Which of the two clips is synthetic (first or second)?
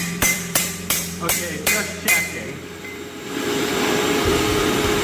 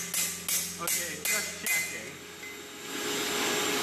first